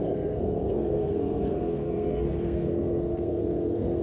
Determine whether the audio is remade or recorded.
remade